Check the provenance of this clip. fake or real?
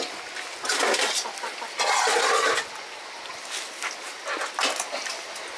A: real